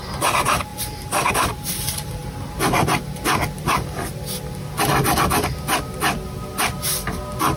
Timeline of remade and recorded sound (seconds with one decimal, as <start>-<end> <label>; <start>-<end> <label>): 0.0-7.6 recorded